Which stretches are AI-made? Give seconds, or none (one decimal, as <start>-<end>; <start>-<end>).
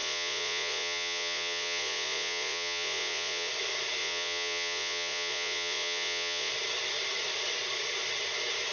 0.0-3.5; 4.0-6.5